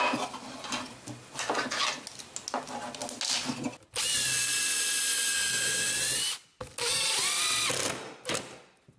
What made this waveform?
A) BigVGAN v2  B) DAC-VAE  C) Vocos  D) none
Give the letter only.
D